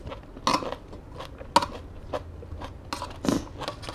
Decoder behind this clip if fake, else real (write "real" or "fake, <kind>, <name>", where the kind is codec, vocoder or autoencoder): real